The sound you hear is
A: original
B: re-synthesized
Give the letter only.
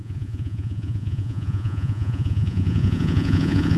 B